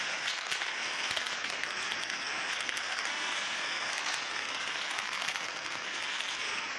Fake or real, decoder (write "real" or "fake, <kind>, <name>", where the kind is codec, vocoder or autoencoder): fake, codec, SNAC